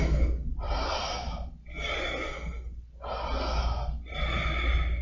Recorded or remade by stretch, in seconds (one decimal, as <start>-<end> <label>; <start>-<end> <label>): 0.0-0.5 recorded; 0.5-1.5 remade; 1.5-5.0 recorded